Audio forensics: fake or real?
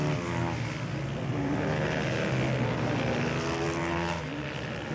real